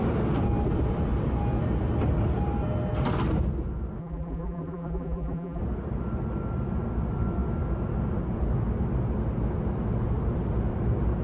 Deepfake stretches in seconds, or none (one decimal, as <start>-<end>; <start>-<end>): 4.0-5.6